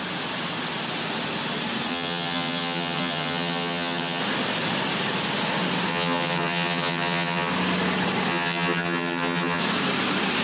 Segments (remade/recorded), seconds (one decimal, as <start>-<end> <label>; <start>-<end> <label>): 0.0-1.9 recorded; 1.9-4.2 remade; 4.2-5.9 recorded; 5.9-7.5 remade; 7.5-8.3 recorded; 8.3-9.6 remade; 9.6-10.4 recorded